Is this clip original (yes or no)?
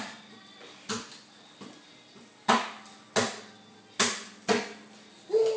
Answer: yes